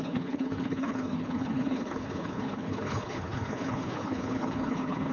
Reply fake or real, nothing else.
fake